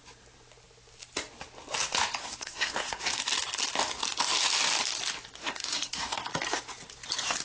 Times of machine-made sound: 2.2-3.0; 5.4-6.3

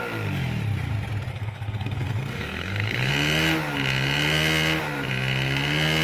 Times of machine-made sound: 1.3-3.1